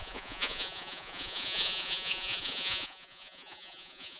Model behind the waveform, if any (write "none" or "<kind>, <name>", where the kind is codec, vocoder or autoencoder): vocoder, Vocos